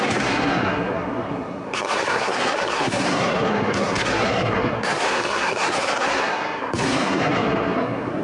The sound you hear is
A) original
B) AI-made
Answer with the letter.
B